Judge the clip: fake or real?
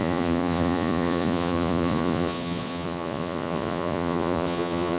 fake